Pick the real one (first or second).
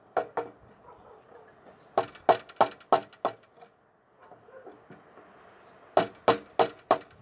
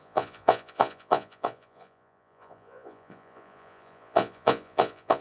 first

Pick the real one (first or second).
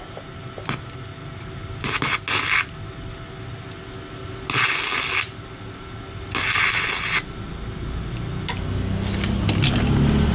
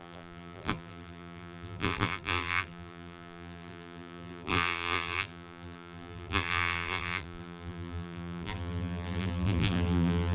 first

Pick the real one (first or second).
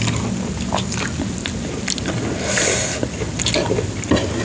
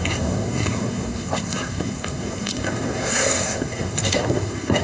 first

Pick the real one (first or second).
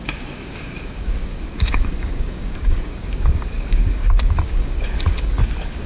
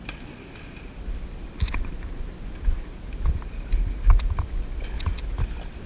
second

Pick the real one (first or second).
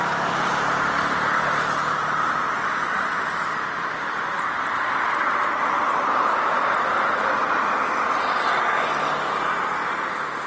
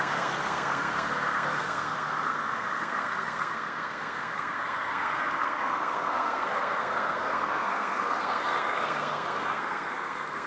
first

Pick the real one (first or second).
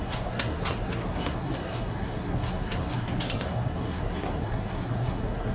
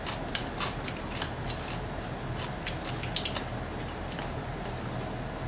second